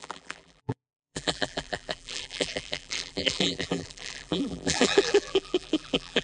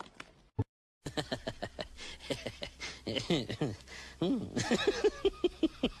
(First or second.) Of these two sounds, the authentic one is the second